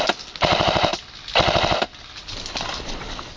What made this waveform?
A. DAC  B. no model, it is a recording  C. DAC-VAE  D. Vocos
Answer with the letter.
B